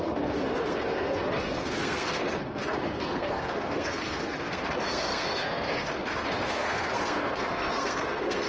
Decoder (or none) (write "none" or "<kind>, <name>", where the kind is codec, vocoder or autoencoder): codec, SNAC